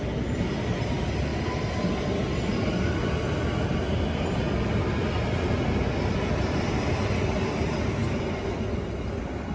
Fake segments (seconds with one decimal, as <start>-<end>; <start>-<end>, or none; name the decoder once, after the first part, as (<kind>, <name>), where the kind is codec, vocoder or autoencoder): none